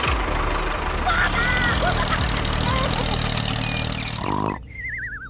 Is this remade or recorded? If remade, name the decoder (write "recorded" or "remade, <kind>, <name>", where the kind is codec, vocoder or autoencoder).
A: recorded